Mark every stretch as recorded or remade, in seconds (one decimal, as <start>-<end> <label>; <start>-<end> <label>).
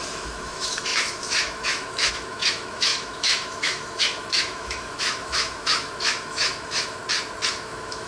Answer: 0.0-7.0 remade; 7.0-7.5 recorded; 7.5-8.1 remade